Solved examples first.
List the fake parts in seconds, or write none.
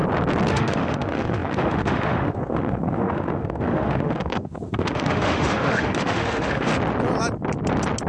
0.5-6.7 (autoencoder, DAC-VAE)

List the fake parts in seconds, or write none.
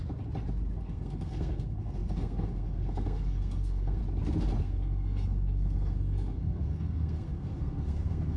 0.8-4.0 (codec, SNAC); 4.6-8.4